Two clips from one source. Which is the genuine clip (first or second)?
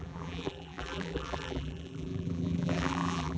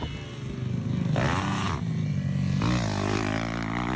second